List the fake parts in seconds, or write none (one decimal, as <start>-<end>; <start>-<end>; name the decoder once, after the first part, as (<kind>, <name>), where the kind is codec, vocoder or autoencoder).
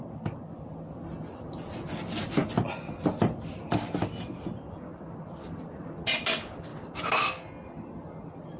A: none